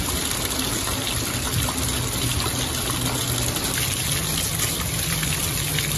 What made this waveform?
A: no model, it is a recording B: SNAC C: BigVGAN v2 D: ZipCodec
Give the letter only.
A